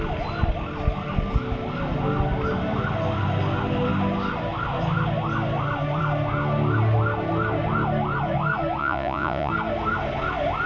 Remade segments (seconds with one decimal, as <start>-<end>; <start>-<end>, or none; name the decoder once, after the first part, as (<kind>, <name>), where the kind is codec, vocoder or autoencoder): 8.8-9.5 (vocoder, Vocos)